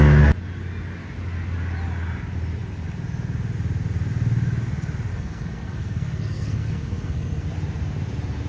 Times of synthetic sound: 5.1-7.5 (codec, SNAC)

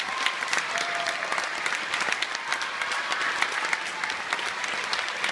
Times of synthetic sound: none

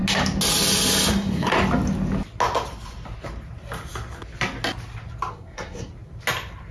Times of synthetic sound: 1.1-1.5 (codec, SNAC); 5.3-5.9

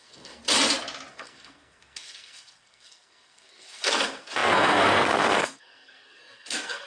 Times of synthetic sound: 0.0-0.4 (codec, SNAC); 1.1-6.9

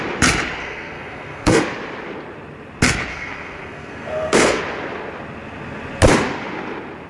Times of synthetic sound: 0.6-1.6 (codec, SNAC); 3.1-4.6

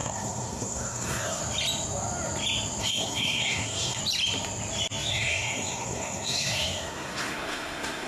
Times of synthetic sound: 0.0-1.4 (codec, SNAC); 2.8-4.0; 5.1-8.1